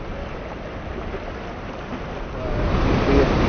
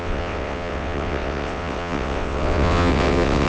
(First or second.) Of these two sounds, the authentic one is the first